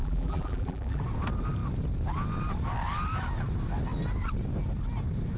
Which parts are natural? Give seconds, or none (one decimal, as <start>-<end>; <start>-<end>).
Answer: 1.0-5.4

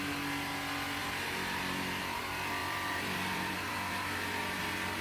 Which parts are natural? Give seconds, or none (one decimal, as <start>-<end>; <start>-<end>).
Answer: 0.0-1.0; 2.2-2.6; 3.9-5.0